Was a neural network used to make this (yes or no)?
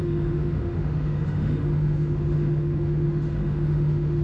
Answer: yes